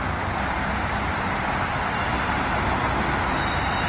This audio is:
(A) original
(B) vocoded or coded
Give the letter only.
A